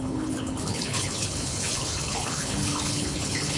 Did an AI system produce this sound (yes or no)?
yes